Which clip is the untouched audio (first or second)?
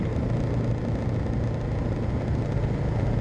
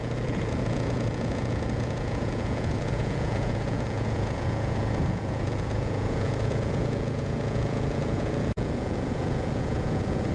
first